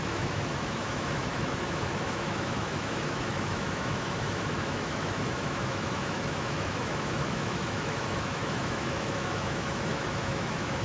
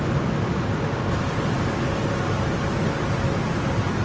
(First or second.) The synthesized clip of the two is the first